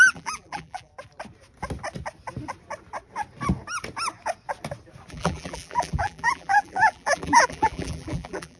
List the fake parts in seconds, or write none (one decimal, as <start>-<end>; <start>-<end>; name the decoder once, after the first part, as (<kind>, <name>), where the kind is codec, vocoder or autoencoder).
0.0-0.9 (vocoder, BigVGAN v2); 5.1-8.6